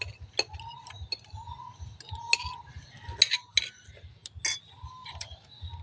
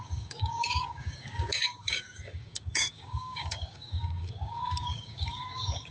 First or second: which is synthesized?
second